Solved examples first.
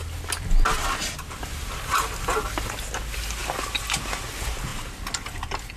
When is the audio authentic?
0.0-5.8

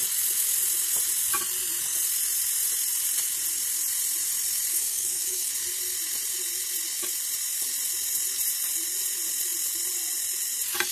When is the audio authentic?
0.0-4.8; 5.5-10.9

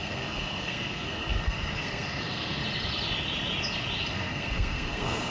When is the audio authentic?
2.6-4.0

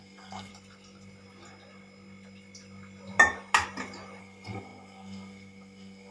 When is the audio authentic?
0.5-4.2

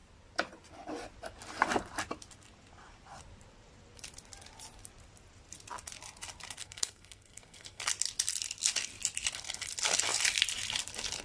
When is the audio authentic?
0.0-6.6; 7.8-11.2

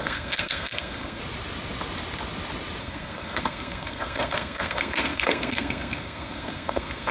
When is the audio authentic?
1.2-2.8

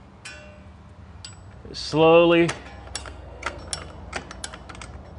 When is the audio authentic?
0.0-3.0; 3.6-5.2